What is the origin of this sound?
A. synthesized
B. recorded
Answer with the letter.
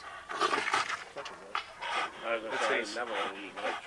A